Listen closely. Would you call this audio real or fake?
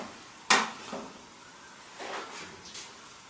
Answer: real